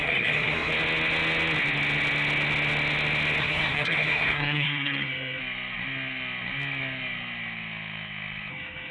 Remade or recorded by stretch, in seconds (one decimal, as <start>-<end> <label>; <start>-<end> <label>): 0.0-0.7 remade; 0.7-3.4 recorded; 3.4-5.4 remade; 5.4-8.5 recorded; 8.5-8.9 remade